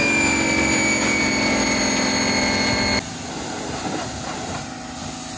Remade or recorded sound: recorded